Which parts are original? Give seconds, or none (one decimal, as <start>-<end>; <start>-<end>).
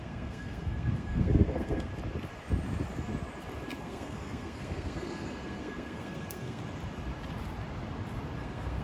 1.9-3.8; 6.6-8.4